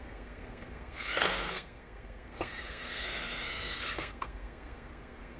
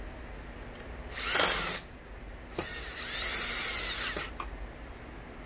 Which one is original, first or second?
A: second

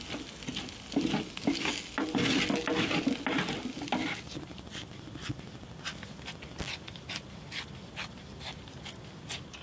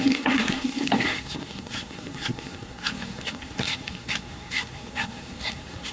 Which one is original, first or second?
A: first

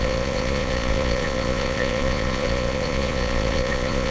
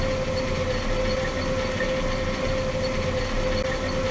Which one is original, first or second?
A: second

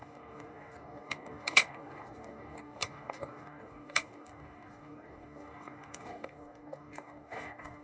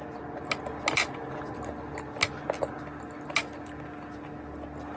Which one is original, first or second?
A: second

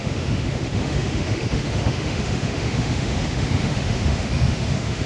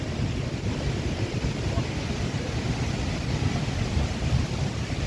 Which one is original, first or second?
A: second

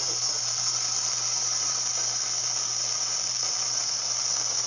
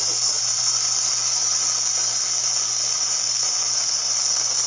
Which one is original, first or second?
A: second